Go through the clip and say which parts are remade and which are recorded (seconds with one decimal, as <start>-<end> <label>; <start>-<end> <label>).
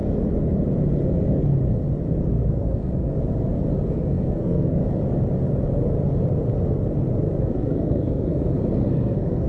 0.0-2.3 recorded; 2.3-3.1 remade; 3.1-3.9 recorded; 3.9-4.8 remade; 4.8-7.4 recorded; 7.4-8.4 remade; 8.4-8.9 recorded; 8.9-9.5 remade